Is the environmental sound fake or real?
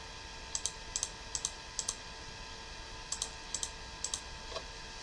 real